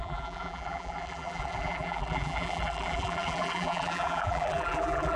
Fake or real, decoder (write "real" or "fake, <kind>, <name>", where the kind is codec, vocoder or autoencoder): fake, vocoder, BigVGAN v2